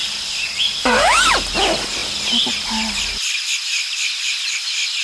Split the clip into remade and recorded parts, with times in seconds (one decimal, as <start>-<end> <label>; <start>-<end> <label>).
0.0-5.0 recorded